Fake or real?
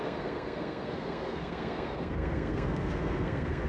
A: fake